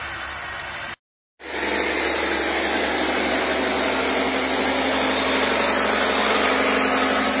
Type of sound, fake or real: real